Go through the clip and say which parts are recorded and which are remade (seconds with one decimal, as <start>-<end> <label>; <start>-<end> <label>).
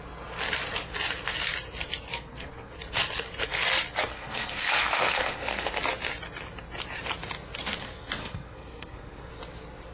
0.0-2.1 recorded; 2.1-2.7 remade; 2.7-4.1 recorded; 4.1-5.8 remade; 5.8-8.2 recorded; 8.2-9.3 remade; 9.3-9.9 recorded